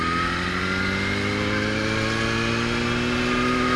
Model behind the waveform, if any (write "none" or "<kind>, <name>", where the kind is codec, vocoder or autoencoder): none